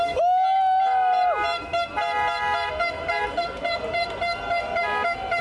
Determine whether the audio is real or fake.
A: real